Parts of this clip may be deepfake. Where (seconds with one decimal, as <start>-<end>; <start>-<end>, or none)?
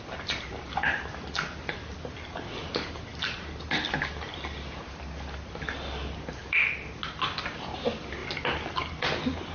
none